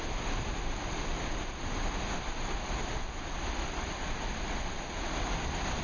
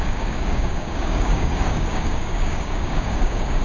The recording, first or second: first